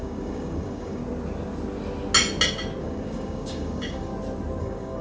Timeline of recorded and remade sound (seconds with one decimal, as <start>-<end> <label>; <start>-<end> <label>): 0.0-1.0 remade; 1.0-2.8 recorded; 2.8-4.1 remade; 4.1-4.6 recorded; 4.6-5.0 remade